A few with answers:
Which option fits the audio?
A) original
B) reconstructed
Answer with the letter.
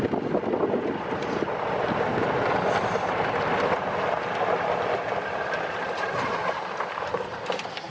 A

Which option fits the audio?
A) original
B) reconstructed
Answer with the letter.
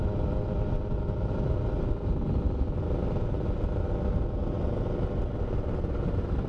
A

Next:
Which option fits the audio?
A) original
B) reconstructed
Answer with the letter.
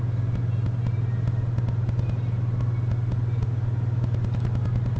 A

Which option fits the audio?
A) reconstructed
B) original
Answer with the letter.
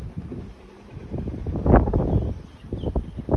B